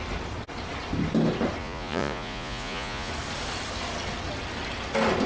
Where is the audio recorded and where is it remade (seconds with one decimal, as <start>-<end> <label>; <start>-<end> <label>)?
0.0-1.6 recorded; 1.6-3.1 remade; 3.1-5.3 recorded